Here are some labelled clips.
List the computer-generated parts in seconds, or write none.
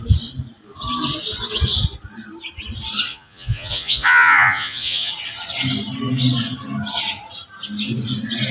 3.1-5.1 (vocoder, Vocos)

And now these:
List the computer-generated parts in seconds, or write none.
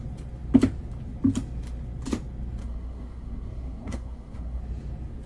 2.6-4.6 (codec, SNAC)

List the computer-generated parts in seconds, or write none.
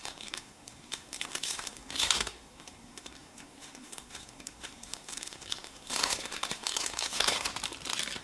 0.0-7.5 (codec, SNAC)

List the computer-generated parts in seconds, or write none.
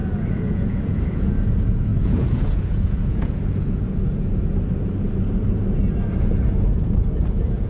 0.0-4.5 (vocoder, Vocos); 6.2-7.7